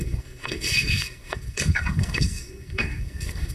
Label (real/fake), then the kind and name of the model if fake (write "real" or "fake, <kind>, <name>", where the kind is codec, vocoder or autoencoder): fake, codec, SNAC